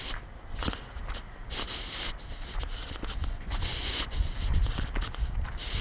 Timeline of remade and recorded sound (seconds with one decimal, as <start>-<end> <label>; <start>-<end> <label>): 0.0-3.2 recorded; 3.2-4.3 remade; 4.3-5.8 recorded